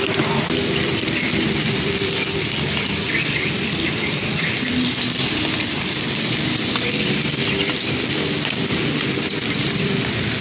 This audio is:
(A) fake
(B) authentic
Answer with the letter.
A